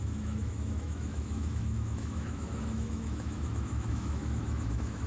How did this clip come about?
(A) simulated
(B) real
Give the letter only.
A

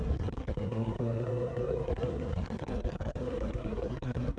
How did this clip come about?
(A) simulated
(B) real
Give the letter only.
A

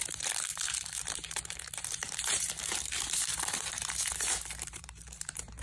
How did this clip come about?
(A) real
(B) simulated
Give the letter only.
B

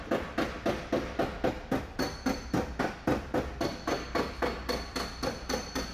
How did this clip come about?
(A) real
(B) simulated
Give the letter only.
A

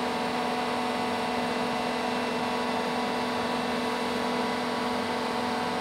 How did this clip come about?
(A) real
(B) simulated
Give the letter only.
A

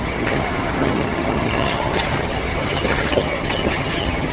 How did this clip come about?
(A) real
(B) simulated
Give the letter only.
B